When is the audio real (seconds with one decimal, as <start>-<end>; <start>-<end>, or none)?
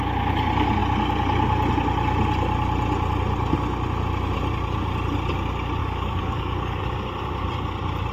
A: 0.0-5.8; 6.8-8.1